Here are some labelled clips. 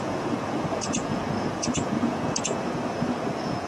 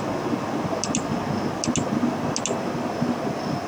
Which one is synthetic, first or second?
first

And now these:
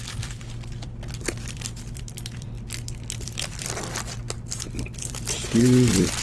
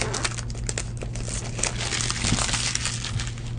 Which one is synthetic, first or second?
first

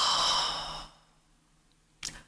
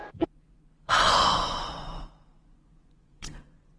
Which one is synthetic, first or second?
second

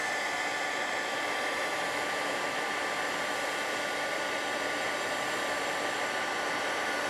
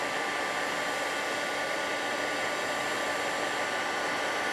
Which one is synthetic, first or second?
first